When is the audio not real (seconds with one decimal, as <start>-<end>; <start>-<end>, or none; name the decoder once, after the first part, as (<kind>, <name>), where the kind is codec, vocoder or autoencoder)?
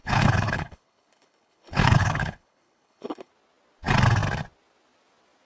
0.0-3.3 (codec, HILCodec)